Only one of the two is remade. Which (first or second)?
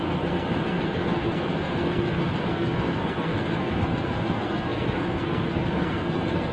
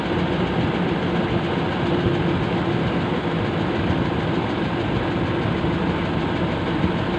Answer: first